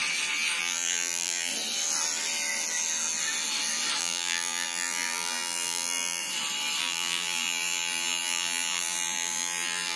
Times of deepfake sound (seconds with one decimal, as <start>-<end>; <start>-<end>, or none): 0.6-1.5; 4.0-6.2; 6.8-10.0